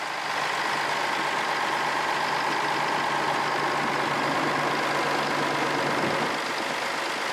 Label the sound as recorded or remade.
recorded